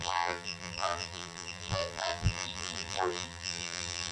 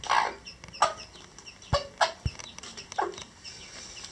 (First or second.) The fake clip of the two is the first